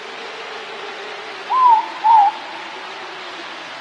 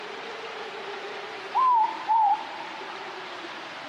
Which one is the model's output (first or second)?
second